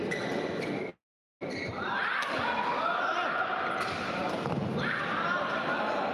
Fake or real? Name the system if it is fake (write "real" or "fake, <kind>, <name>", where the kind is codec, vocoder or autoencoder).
real